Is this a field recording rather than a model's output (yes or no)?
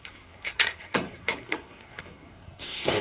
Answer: no